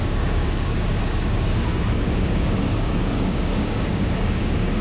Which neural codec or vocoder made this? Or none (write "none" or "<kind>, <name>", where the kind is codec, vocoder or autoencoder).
codec, DAC